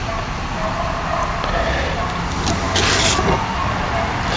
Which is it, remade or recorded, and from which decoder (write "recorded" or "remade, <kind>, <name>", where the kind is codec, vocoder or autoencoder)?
recorded